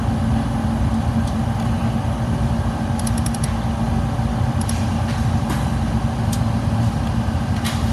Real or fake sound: real